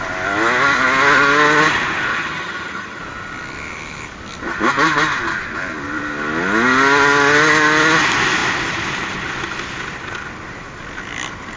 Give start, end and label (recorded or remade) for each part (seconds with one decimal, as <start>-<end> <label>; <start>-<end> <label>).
0.0-2.1 recorded; 2.1-3.0 remade; 3.0-11.6 recorded